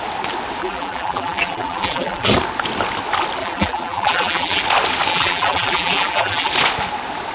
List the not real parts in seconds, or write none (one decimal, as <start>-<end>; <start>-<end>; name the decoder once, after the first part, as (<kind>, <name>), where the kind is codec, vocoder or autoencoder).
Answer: 0.6-2.3 (vocoder, BigVGAN v2); 3.4-4.6; 5.1-6.5